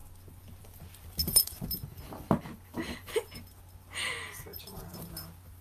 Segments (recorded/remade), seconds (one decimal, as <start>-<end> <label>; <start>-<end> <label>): 0.0-1.2 recorded; 1.2-3.1 remade; 3.1-4.5 recorded; 4.5-5.1 remade; 5.1-5.6 recorded